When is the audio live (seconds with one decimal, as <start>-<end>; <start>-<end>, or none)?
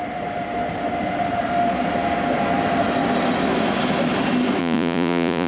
0.0-4.6